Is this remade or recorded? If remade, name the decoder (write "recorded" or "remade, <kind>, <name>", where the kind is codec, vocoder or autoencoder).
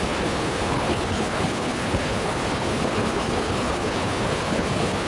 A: remade, codec, HILCodec